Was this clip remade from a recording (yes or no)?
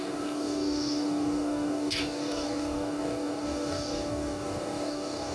yes